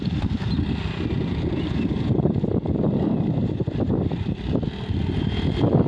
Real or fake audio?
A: real